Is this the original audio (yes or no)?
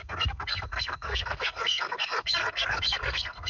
no